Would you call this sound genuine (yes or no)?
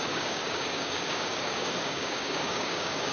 no